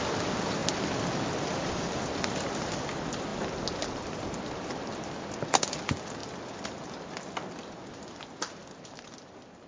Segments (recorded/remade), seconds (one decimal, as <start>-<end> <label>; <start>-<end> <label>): 0.0-9.7 recorded